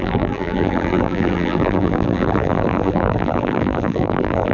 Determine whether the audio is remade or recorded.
remade